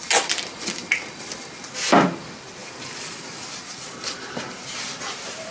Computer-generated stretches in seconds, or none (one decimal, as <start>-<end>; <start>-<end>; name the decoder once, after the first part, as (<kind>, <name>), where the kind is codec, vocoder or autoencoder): none